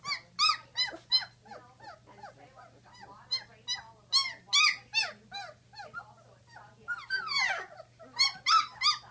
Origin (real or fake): real